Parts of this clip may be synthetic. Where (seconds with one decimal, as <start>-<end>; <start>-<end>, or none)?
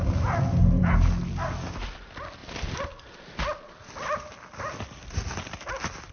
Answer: none